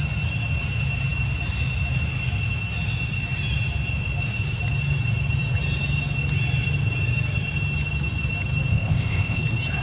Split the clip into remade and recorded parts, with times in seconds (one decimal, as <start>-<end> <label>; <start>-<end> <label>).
0.0-8.7 recorded; 8.7-9.4 remade; 9.4-9.8 recorded